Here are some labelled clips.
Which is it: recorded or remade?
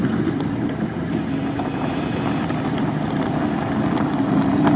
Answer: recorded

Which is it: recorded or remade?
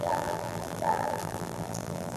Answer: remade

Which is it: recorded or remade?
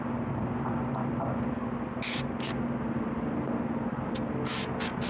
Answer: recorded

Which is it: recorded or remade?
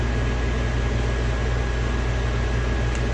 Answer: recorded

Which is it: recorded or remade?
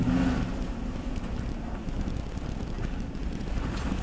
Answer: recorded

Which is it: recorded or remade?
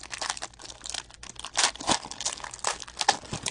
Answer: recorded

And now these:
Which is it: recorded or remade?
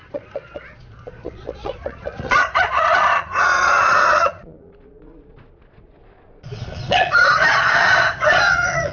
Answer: remade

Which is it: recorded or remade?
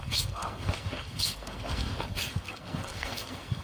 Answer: remade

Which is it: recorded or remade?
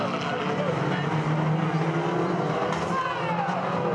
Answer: recorded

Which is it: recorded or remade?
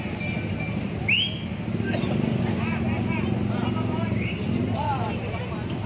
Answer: recorded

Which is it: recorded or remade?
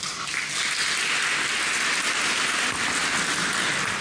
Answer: recorded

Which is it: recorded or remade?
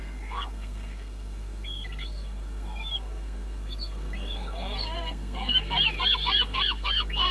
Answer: remade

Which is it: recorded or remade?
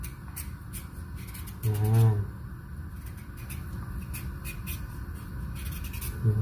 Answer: recorded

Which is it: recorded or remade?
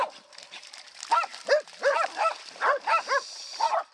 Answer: recorded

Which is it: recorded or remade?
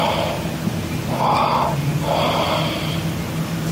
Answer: recorded